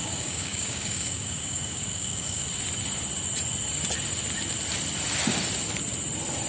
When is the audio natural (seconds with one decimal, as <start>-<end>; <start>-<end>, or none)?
2.4-6.5